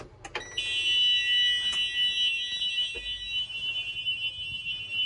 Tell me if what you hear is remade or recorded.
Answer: recorded